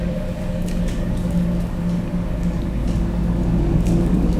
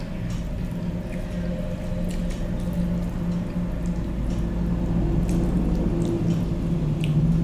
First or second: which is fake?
first